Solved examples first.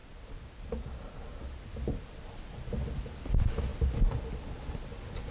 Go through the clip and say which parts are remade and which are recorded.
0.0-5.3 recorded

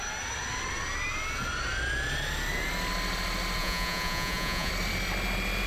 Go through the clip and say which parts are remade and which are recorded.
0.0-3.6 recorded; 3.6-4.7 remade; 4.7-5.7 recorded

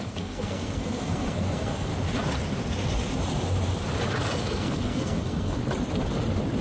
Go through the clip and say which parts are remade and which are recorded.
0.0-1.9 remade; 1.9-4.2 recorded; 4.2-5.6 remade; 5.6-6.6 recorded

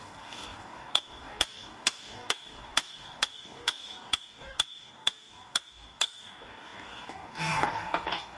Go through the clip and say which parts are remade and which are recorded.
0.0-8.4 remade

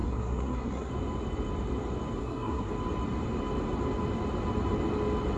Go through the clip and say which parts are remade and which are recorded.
0.0-0.9 remade; 0.9-2.2 recorded; 2.2-2.7 remade; 2.7-5.4 recorded

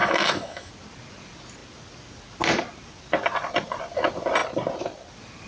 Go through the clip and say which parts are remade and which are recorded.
0.0-0.7 remade; 0.7-5.5 recorded

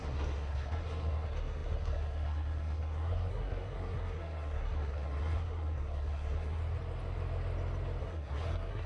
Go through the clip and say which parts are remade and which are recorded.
0.0-6.6 remade; 6.6-8.0 recorded; 8.0-8.9 remade

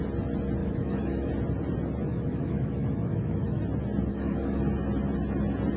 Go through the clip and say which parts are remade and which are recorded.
0.0-0.6 recorded; 0.6-1.3 remade; 1.3-2.1 recorded; 2.1-3.6 remade; 3.6-4.1 recorded; 4.1-4.6 remade; 4.6-5.8 recorded